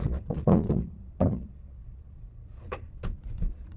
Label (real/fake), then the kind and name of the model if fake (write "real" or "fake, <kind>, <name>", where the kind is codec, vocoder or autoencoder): fake, vocoder, Vocos